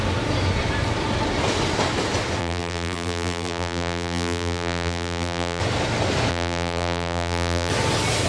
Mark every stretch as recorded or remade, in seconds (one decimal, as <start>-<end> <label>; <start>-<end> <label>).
0.0-2.4 recorded; 2.4-5.6 remade; 5.6-6.3 recorded; 6.3-7.7 remade; 7.7-8.3 recorded